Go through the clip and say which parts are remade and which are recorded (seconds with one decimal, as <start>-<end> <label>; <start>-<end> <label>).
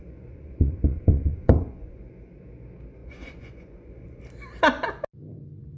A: 0.0-2.1 remade; 2.1-3.0 recorded; 3.0-4.2 remade; 4.2-5.8 recorded